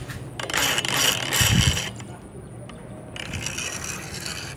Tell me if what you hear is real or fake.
real